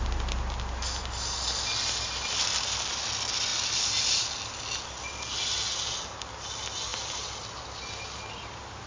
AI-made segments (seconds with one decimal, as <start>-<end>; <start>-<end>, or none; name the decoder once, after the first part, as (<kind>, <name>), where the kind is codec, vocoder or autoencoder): none